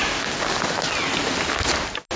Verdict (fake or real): real